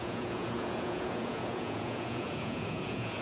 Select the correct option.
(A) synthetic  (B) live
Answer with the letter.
A